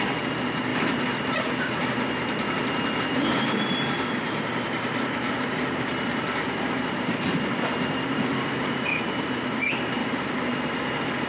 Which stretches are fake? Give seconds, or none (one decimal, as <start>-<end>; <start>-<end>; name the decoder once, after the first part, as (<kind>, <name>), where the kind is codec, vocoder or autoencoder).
1.8-5.9 (vocoder, BigVGAN v2); 10.0-11.3